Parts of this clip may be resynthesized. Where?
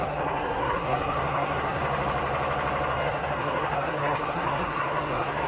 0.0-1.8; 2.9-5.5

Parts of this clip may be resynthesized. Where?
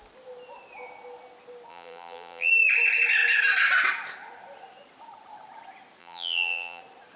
1.7-2.5; 6.0-6.8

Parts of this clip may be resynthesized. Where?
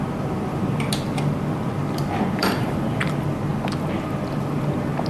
2.4-3.0